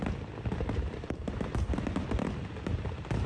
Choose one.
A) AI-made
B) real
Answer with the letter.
B